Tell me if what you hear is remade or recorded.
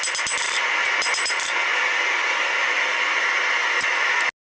recorded